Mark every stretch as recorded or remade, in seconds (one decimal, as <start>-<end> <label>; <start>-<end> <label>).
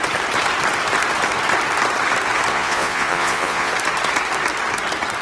0.0-2.5 recorded; 2.5-3.7 remade; 3.7-5.2 recorded